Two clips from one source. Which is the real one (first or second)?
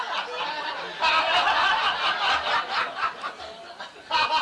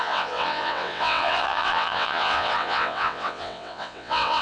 first